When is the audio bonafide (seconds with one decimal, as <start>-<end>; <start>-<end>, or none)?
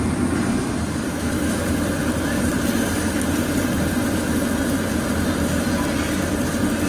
0.0-1.1; 1.7-6.9